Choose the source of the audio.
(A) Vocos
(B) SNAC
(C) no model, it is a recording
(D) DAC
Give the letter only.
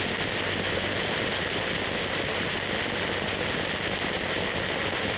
C